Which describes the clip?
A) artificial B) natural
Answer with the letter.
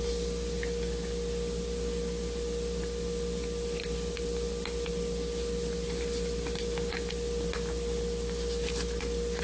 B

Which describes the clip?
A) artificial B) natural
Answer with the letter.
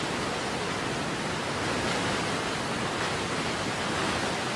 B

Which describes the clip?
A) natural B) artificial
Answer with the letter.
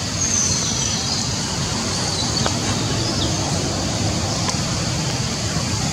B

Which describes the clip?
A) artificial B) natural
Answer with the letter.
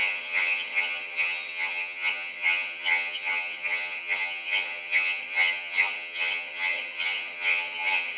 A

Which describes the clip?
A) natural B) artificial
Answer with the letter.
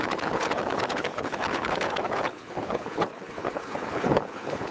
B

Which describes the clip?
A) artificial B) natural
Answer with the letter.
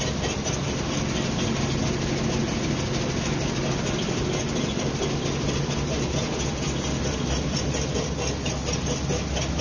B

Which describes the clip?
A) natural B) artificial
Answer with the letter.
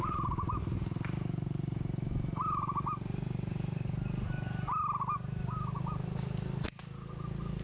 A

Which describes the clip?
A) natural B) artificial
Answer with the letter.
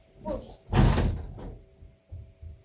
A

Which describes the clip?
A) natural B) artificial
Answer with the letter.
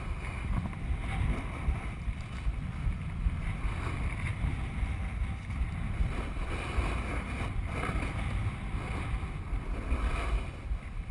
A